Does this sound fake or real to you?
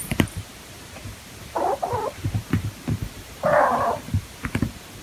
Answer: fake